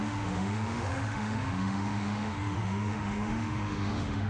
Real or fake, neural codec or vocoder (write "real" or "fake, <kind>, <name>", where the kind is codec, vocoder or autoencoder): fake, autoencoder, DAC-VAE